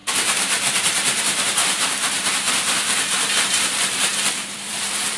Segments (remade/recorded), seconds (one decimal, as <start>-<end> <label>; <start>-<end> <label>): 0.0-5.2 remade